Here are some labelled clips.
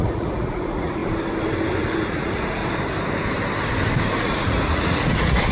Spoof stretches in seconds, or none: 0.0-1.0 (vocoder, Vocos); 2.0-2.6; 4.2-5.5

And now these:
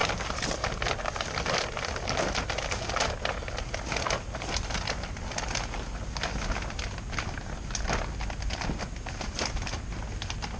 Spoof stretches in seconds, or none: none